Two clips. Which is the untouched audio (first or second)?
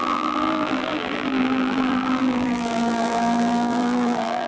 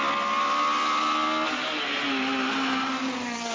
second